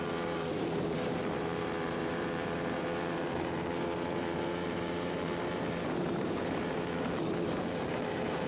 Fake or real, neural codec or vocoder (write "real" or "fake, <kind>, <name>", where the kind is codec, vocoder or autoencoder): fake, vocoder, BigVGAN v2